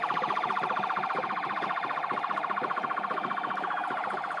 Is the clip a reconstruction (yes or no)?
no